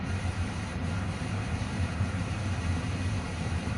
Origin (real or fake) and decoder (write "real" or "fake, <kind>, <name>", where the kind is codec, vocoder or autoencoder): fake, vocoder, BigVGAN v2